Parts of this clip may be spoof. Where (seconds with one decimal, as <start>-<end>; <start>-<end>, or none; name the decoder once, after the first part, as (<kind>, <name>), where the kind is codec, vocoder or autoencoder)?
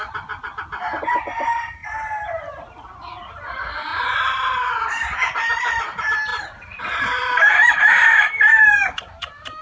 0.0-1.8 (vocoder, BigVGAN v2); 2.3-9.6